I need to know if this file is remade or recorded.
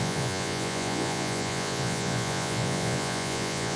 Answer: remade